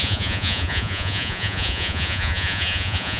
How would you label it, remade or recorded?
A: remade